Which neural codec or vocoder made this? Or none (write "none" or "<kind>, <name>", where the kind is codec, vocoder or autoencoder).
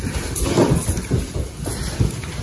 none